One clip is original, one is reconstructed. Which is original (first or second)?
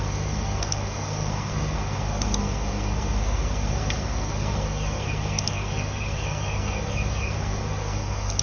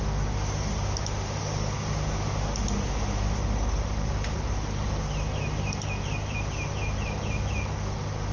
second